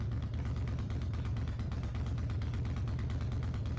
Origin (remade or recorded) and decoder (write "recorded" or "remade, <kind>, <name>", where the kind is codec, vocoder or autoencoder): recorded